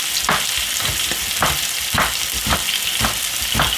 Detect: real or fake real